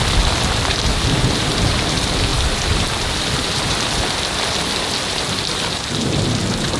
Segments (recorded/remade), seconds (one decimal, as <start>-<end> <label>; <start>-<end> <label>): 0.0-6.8 recorded